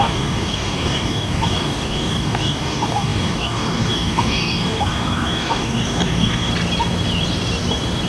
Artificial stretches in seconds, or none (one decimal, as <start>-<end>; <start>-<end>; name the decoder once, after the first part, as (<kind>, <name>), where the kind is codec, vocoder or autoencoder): 0.0-6.5 (codec, DAC)

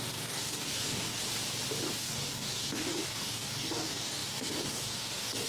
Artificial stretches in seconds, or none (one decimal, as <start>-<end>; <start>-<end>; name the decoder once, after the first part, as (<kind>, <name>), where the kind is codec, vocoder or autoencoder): 0.0-1.2 (codec, DAC); 1.9-5.5